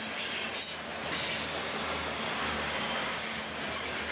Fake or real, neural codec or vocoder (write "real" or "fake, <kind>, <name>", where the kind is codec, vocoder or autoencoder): real